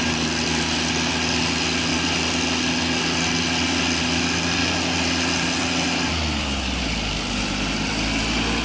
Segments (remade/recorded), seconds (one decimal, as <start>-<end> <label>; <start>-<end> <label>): 0.0-8.6 recorded